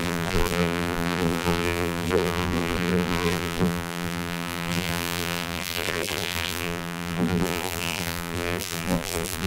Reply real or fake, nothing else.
fake